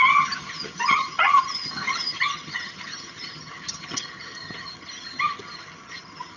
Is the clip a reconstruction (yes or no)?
yes